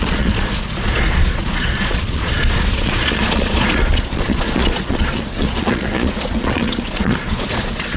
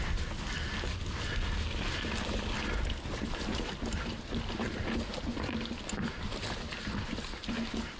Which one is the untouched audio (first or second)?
second